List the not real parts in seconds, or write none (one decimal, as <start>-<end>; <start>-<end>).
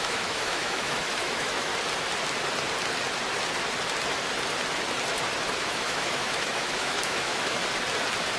0.0-1.7; 5.6-7.6